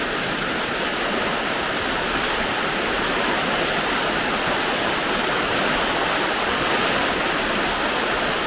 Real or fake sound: real